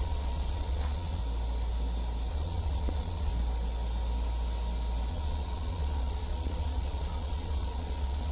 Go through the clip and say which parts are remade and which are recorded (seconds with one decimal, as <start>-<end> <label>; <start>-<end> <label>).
0.0-1.2 remade; 1.2-2.3 recorded; 2.3-3.3 remade; 3.3-5.1 recorded; 5.1-8.3 remade